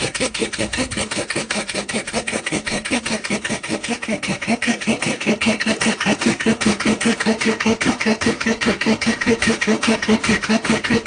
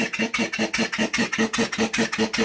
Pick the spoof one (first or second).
first